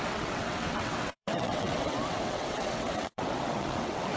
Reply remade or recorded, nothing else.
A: remade